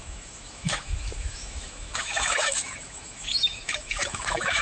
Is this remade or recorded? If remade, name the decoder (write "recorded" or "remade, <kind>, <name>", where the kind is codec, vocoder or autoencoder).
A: remade, autoencoder, DAC-VAE